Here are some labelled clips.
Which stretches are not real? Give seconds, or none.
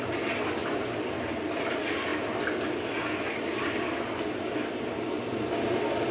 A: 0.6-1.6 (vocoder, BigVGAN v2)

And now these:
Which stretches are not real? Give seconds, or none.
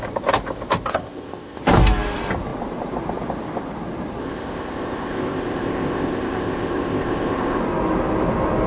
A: 0.9-1.6 (codec, ZipCodec); 4.2-7.6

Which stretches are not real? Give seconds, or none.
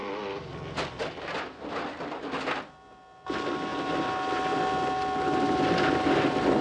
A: 0.0-1.4 (vocoder, BigVGAN v2); 3.7-4.6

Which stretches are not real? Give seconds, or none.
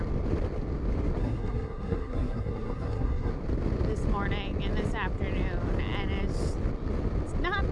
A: 1.2-3.3 (codec, SNAC)